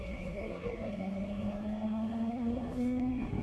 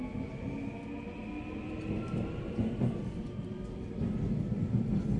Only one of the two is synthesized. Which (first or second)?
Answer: first